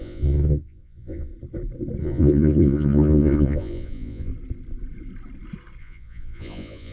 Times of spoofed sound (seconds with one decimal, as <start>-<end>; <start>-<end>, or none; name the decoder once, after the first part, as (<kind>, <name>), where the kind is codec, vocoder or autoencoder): 0.0-1.3 (vocoder, Vocos); 2.0-4.3; 5.8-6.9